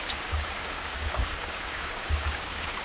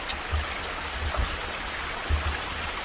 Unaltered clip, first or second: second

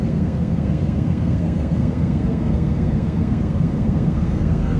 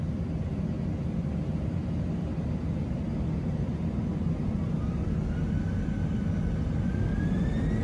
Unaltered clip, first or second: second